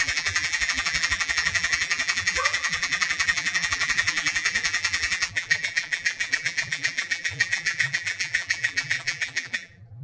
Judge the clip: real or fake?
fake